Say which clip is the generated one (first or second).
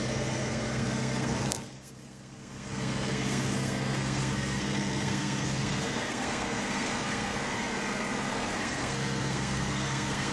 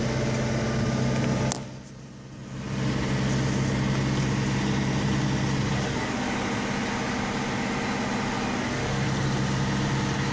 first